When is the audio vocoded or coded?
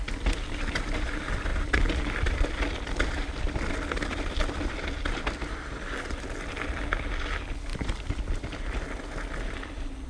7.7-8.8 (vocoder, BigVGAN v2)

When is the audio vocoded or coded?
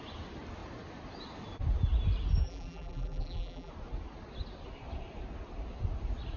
2.4-3.7 (vocoder, BigVGAN v2)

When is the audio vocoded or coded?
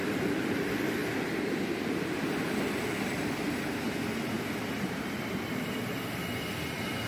0.0-7.1 (vocoder, BigVGAN v2)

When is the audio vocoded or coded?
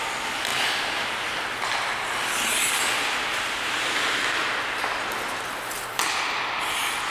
none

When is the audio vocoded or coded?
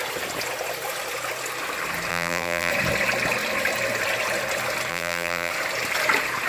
2.1-2.7 (vocoder, BigVGAN v2); 4.9-5.5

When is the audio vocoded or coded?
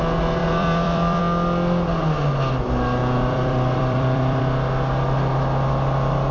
0.4-1.2 (vocoder, BigVGAN v2); 3.0-4.4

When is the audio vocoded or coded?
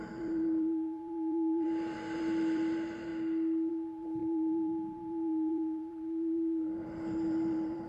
0.0-3.1 (vocoder, BigVGAN v2); 3.7-7.9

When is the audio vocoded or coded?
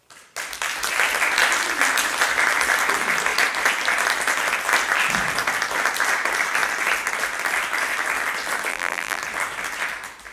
8.7-9.2 (vocoder, BigVGAN v2)